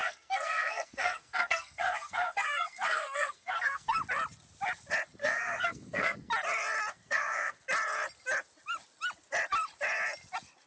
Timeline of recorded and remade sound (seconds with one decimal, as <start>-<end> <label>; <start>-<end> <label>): 0.0-4.0 remade; 4.0-5.2 recorded; 5.2-6.3 remade; 6.3-6.9 recorded; 6.9-7.6 remade; 7.6-10.7 recorded